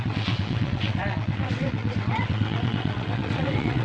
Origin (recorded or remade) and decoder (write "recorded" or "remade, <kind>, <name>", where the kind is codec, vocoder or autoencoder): remade, vocoder, WaveNeXt